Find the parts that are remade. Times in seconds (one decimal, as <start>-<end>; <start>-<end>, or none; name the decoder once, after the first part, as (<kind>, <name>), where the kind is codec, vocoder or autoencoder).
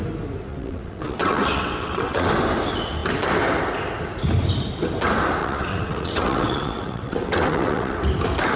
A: 0.5-2.3 (vocoder, WaveNeXt); 5.4-8.0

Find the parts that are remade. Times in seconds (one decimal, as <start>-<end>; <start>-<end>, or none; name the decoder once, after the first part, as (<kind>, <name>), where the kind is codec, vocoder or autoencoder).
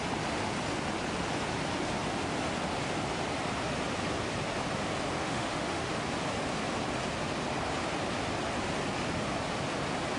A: 5.2-5.9 (autoencoder, DAC-VAE)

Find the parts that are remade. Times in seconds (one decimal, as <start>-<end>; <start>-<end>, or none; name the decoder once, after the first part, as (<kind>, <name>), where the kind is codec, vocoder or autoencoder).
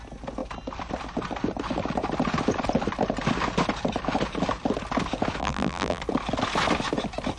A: 5.4-6.0 (vocoder, BigVGAN v2)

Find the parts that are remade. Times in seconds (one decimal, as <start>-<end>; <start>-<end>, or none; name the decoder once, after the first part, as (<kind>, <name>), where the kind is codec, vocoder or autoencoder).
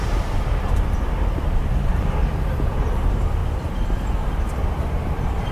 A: 0.0-5.5 (vocoder, BigVGAN v2)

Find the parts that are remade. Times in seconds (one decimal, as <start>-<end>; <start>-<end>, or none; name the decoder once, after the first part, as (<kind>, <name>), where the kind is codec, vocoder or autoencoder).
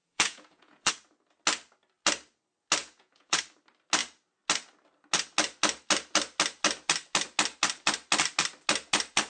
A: 0.0-0.9 (vocoder, Vocos); 2.8-3.4